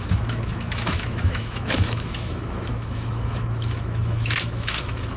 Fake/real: fake